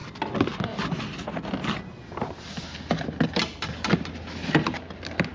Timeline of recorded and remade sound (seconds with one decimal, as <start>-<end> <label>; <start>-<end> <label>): 0.0-5.3 recorded